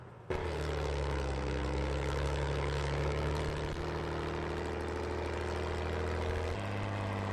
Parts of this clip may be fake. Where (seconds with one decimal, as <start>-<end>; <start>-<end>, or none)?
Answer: 0.4-3.4